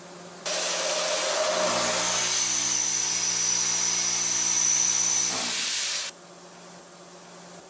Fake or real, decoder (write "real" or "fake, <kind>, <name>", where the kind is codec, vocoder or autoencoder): real